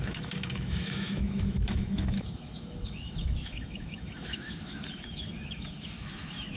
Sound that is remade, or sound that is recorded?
remade